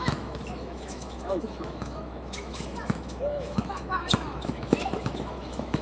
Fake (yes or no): yes